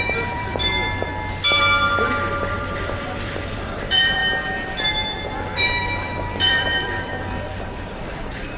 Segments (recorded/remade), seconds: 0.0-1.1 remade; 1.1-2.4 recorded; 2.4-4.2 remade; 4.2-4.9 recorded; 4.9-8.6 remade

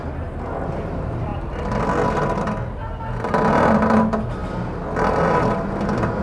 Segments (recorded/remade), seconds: 0.0-6.2 recorded

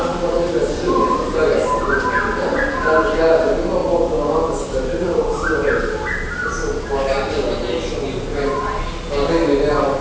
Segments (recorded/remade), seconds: 0.0-10.0 recorded